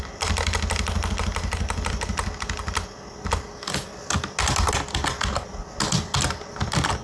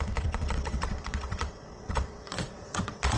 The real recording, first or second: first